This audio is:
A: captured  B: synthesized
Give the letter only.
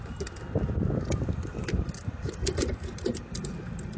A